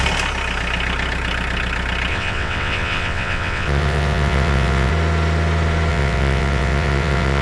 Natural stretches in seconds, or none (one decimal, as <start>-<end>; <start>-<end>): 0.0-2.1; 4.9-5.9